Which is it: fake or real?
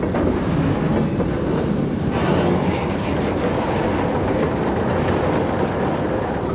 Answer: real